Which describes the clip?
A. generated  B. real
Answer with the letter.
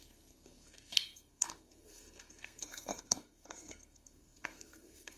A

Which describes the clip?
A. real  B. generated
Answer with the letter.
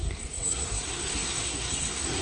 B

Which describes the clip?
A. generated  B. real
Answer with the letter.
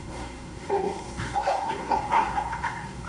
A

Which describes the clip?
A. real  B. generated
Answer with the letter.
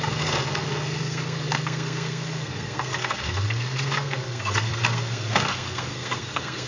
B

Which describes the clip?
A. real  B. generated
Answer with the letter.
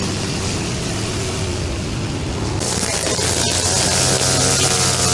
A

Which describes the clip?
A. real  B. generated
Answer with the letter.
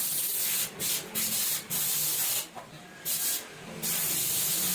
A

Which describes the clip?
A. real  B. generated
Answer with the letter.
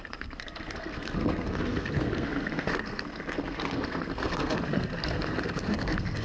B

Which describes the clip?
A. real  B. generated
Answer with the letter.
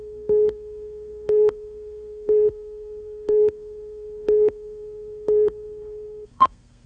B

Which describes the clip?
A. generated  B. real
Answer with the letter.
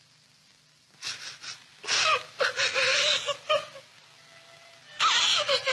B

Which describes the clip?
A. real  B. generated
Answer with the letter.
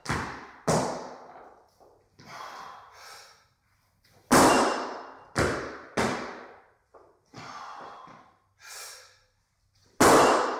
A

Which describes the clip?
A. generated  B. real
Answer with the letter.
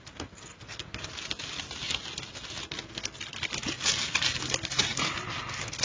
B